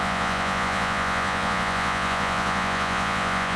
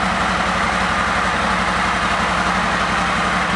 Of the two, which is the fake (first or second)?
first